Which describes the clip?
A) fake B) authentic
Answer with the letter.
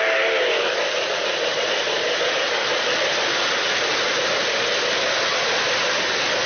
B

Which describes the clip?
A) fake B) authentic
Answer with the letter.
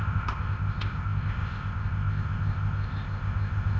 A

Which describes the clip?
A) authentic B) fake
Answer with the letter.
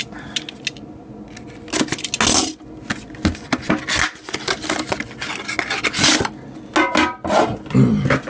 A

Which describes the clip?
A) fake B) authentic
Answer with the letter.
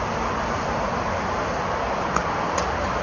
B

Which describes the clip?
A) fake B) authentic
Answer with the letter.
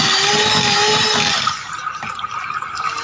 B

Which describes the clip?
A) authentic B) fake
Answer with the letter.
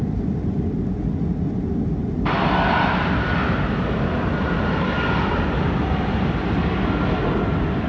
A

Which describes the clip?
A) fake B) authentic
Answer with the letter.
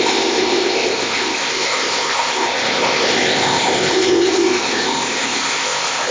A